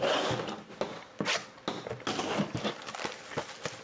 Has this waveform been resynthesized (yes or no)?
no